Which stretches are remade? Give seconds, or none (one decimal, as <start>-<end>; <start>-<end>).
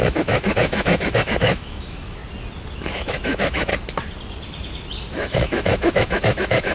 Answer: 0.0-2.2; 2.8-3.7; 5.1-6.7